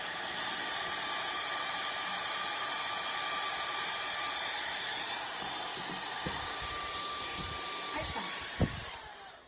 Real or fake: fake